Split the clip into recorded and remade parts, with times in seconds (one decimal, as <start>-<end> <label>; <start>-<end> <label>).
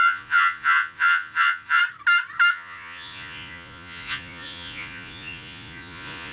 0.0-1.8 remade; 1.8-2.5 recorded; 2.5-6.3 remade